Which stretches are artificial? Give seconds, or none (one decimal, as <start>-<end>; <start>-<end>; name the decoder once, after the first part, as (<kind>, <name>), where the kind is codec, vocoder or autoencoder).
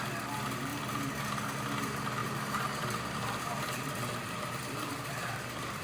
0.7-1.2 (vocoder, BigVGAN v2); 2.2-5.8